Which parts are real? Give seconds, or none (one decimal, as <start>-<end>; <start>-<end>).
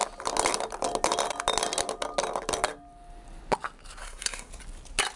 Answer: 0.0-4.0; 4.5-5.2